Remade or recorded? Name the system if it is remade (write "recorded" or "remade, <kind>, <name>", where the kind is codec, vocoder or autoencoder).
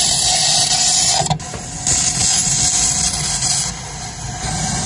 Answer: recorded